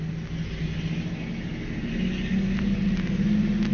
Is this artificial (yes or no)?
no